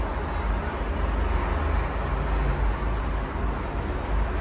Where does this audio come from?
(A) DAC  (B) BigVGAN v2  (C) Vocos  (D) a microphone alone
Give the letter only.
D